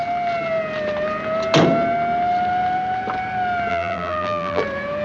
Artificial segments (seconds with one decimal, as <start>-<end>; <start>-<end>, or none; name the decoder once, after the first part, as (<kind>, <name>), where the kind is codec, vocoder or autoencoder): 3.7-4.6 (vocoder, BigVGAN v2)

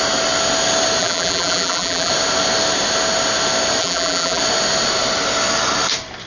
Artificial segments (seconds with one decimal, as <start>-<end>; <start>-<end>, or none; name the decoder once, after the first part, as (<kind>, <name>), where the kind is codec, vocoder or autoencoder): 1.0-2.1 (vocoder, BigVGAN v2); 3.8-4.4

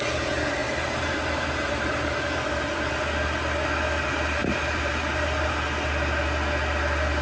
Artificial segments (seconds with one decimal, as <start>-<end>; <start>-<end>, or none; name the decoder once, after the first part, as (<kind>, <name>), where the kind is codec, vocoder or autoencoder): 0.6-2.9 (vocoder, BigVGAN v2); 4.4-5.5